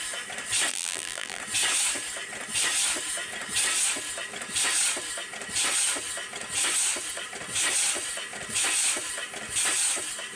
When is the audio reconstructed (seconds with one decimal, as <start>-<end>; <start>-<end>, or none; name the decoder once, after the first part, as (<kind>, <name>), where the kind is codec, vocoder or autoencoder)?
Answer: 0.7-1.4 (vocoder, BigVGAN v2)